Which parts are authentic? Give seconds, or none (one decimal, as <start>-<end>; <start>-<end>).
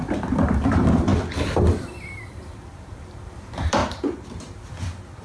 1.1-1.8; 3.8-5.2